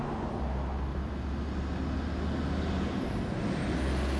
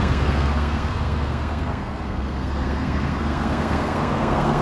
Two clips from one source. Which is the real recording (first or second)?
first